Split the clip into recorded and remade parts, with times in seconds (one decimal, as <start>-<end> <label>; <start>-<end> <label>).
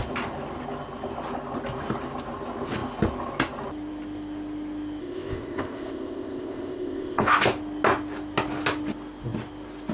0.0-5.0 recorded; 5.0-7.2 remade; 7.2-9.9 recorded